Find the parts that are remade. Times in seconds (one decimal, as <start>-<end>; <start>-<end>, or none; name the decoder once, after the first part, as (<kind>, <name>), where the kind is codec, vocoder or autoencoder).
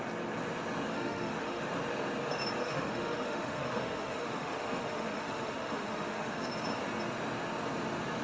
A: 0.9-1.6 (autoencoder, DAC-VAE); 2.6-6.5